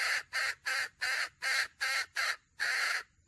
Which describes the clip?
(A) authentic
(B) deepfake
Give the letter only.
A